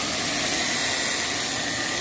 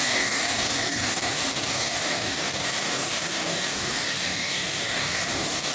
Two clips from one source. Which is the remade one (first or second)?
second